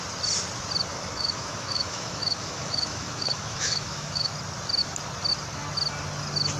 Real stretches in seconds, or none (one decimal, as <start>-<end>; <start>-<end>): 0.0-0.9; 4.3-6.6